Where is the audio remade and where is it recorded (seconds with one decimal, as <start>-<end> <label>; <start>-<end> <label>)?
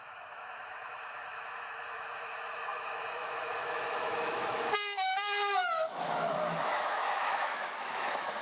0.0-8.4 remade